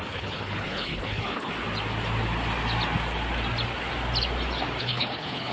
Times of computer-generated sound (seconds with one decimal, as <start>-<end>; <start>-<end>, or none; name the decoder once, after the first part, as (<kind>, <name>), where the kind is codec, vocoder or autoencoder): 0.0-1.5 (codec, HILCodec); 4.8-5.5